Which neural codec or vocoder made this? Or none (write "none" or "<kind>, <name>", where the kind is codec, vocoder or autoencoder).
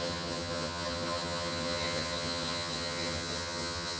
vocoder, HiFi-GAN